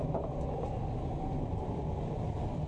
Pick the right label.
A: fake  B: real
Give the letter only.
A